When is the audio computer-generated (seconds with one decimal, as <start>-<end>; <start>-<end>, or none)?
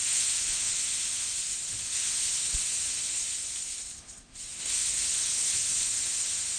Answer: 0.0-6.6